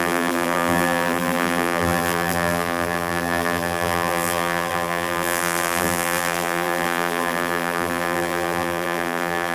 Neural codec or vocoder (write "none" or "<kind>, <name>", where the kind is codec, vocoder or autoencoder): vocoder, BigVGAN v2